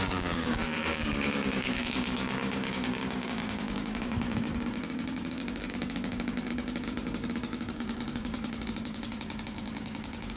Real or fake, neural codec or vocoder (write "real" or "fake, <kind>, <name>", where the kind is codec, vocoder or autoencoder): fake, codec, DAC